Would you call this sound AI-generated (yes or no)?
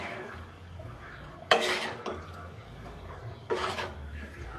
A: yes